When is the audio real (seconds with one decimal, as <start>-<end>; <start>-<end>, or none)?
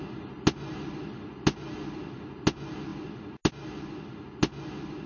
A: 0.0-5.1